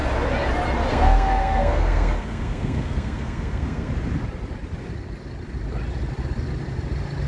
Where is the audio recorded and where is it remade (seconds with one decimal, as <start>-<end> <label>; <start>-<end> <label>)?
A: 0.0-0.9 recorded; 0.9-3.9 remade; 3.9-7.3 recorded